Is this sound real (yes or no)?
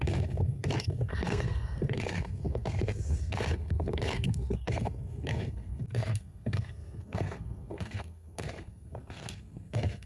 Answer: no